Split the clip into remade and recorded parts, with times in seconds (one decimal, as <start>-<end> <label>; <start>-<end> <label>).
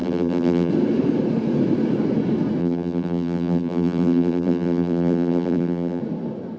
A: 0.0-0.7 remade; 0.7-2.6 recorded; 2.6-6.0 remade; 6.0-6.6 recorded